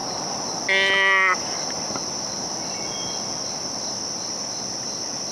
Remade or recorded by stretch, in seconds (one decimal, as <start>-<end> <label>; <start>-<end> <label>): 0.0-5.3 recorded

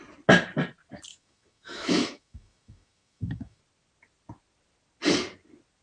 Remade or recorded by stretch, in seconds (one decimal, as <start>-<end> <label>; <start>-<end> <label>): 0.0-1.1 recorded; 1.1-3.6 remade; 3.6-5.8 recorded

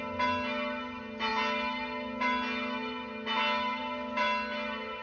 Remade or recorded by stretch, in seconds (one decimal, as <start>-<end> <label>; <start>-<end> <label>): 0.0-5.0 recorded

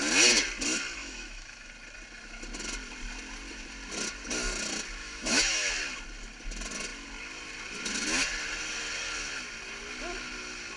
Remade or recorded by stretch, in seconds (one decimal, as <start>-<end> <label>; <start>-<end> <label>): 0.0-1.0 recorded; 1.0-1.7 remade; 1.7-5.0 recorded; 5.0-5.7 remade; 5.7-10.8 recorded

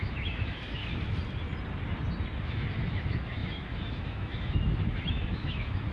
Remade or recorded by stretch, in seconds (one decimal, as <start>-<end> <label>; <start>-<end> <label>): 0.0-0.8 remade; 0.8-2.4 recorded; 2.4-5.9 remade

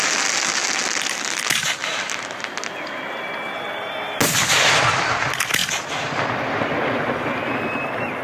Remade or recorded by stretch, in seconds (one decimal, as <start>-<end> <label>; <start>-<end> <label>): 0.0-8.2 recorded

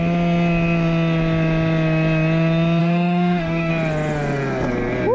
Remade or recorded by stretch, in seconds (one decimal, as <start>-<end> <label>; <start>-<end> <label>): 0.0-2.8 recorded; 2.8-3.7 remade; 3.7-5.1 recorded